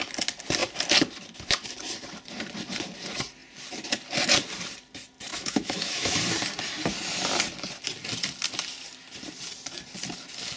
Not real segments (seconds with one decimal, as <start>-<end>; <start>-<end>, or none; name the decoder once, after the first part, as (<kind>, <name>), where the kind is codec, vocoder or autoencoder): 5.3-6.2 (autoencoder, DAC-VAE)